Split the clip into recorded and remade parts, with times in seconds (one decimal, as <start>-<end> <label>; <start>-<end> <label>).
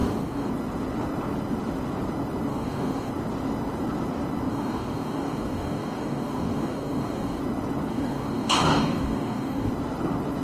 0.0-0.5 remade; 0.5-2.5 recorded; 2.5-3.1 remade; 3.1-4.5 recorded; 4.5-7.4 remade; 7.4-7.9 recorded; 7.9-9.7 remade; 9.7-10.4 recorded